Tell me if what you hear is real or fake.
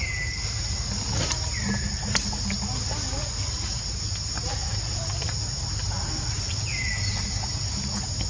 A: real